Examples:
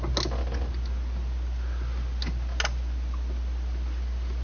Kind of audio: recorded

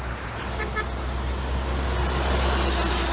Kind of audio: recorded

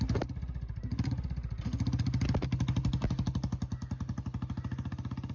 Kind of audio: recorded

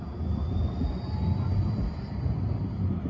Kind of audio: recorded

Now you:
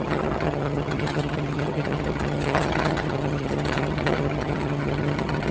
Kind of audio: remade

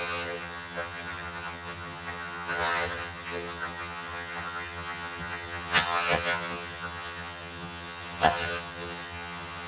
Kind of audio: remade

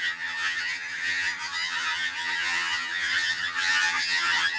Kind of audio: remade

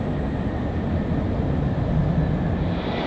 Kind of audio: recorded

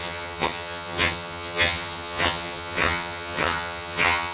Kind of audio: remade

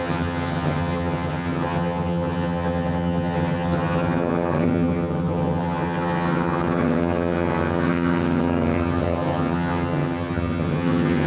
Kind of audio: remade